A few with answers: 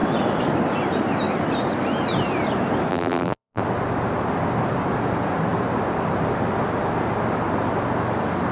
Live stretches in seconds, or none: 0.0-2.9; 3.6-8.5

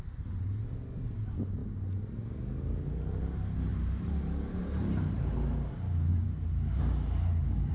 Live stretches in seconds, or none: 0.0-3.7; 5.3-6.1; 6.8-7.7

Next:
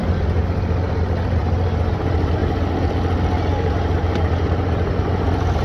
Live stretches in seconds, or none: 0.6-1.4; 2.0-5.6

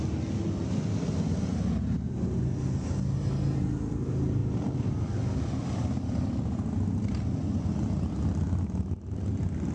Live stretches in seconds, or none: 0.0-4.4; 7.2-9.7